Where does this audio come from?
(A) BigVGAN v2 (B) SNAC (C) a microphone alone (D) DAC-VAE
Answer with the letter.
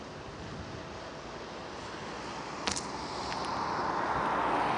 C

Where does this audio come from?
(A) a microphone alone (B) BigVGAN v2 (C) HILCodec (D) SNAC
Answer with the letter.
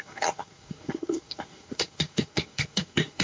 D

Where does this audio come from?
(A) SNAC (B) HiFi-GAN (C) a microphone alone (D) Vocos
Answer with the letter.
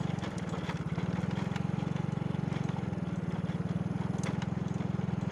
C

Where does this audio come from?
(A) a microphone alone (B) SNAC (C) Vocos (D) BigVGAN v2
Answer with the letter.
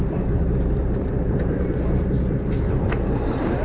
D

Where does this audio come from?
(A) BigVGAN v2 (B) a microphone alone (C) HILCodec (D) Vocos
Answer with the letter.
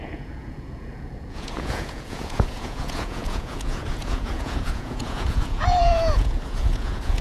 D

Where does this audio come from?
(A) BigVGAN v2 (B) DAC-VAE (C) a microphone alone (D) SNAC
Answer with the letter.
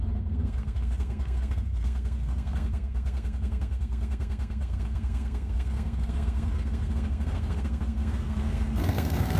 D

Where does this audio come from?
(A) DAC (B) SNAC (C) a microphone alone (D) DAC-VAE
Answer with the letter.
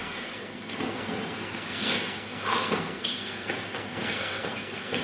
B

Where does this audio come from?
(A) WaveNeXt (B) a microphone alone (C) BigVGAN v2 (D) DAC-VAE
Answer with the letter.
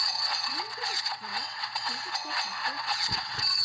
A